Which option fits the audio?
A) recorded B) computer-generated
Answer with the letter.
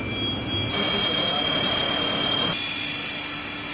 A